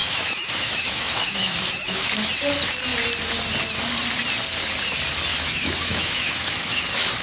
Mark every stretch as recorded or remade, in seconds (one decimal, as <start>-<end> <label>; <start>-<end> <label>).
0.0-2.3 remade; 2.3-5.3 recorded; 5.3-6.8 remade; 6.8-7.2 recorded